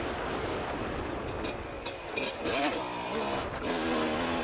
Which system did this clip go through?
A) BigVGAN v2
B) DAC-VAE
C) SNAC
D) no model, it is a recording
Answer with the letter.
D